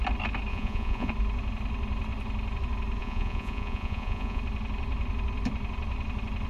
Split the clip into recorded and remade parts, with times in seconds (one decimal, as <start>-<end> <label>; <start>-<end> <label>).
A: 0.0-0.5 recorded; 0.5-1.1 remade; 1.1-3.0 recorded; 3.0-4.4 remade; 4.4-6.5 recorded